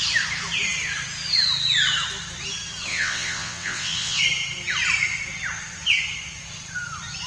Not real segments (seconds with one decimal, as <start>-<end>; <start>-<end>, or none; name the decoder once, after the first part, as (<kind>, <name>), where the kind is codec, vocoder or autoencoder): 2.9-4.2 (vocoder, WaveNeXt)